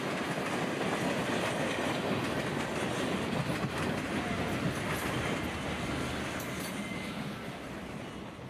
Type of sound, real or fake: real